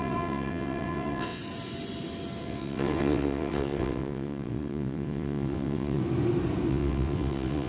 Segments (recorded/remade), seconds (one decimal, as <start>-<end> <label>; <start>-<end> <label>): 0.0-1.4 remade; 1.4-2.4 recorded; 2.4-6.0 remade; 6.0-6.7 recorded; 6.7-7.7 remade